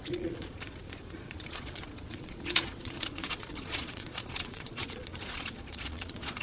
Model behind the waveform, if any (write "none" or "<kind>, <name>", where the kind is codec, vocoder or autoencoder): vocoder, Vocos